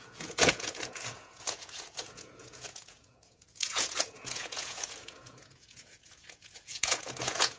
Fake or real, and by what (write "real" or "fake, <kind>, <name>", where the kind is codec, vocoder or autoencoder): fake, vocoder, Vocos